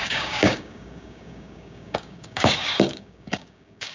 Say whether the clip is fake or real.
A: fake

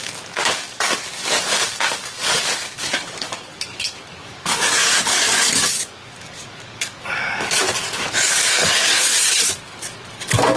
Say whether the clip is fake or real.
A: fake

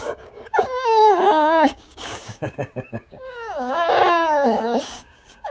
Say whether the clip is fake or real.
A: fake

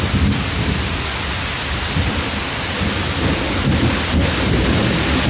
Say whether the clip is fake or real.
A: real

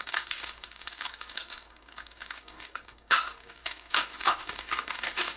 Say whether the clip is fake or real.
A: fake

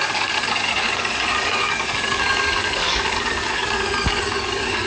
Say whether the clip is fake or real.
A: fake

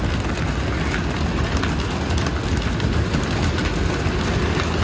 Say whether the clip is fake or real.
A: real